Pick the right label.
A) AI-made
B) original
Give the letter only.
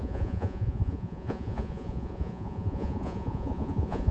A